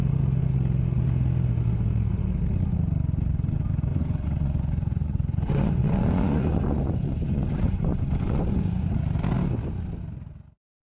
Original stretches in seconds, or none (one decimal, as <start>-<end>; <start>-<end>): 0.0-3.9; 8.9-10.8